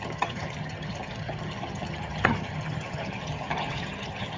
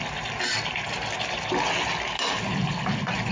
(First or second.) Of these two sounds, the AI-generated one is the first